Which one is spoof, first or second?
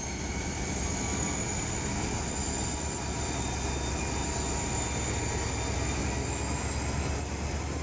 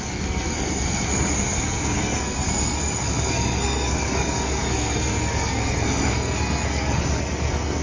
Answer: second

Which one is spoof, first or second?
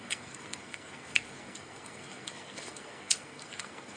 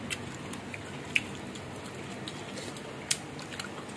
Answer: first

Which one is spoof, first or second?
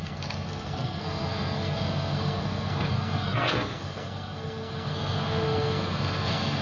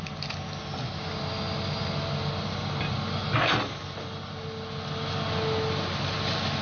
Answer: first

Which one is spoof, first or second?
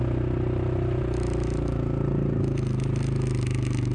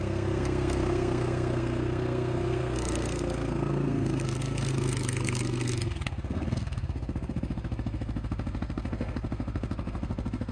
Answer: second